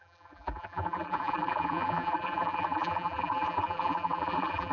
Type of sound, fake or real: fake